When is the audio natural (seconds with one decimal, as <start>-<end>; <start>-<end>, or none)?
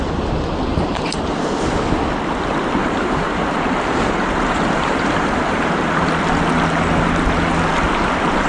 0.0-0.7; 1.3-2.8; 6.1-8.5